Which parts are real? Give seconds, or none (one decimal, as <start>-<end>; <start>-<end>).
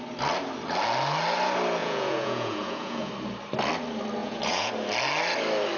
0.0-1.8; 3.1-4.2; 4.7-5.8